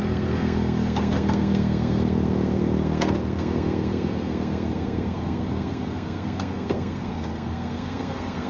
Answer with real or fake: fake